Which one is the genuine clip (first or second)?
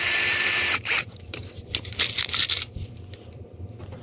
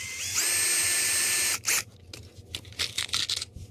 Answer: second